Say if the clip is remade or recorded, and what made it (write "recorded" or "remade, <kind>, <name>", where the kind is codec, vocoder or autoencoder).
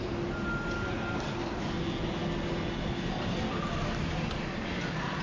recorded